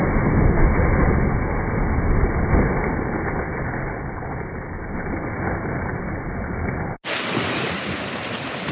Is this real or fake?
real